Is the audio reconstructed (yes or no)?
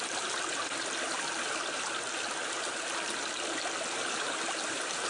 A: no